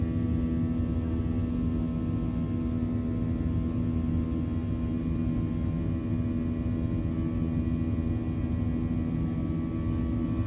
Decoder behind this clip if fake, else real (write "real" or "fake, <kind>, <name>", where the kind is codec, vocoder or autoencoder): real